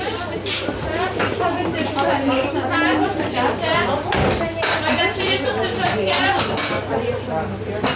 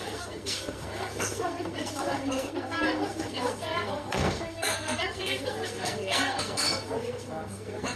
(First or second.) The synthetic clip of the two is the second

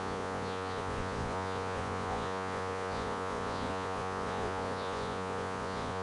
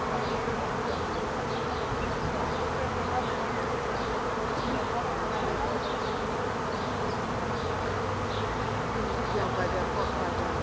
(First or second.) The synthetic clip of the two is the first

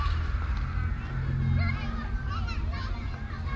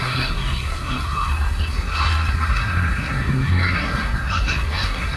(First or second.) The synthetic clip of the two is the second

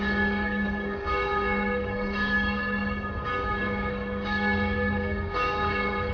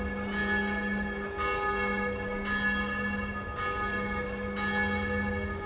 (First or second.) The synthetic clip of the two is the first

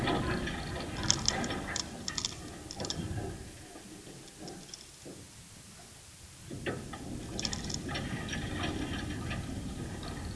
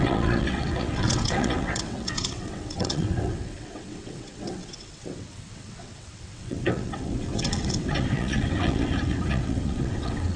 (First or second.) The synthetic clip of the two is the second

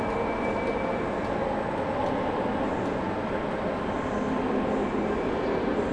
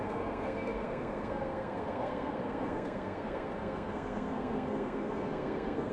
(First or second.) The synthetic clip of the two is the second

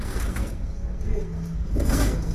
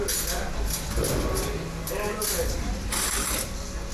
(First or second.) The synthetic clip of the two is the first